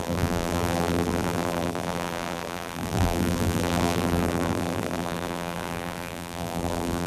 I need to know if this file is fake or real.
fake